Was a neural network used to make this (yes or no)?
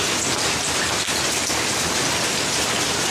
no